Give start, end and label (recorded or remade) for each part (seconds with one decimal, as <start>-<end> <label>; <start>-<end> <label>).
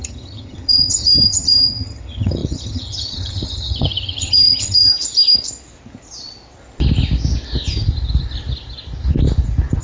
0.0-4.9 remade; 4.9-9.8 recorded